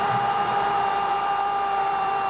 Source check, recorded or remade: remade